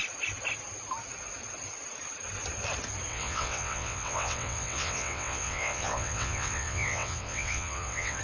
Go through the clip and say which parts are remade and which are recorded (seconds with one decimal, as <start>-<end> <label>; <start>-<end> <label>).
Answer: 0.0-3.1 recorded; 3.1-8.2 remade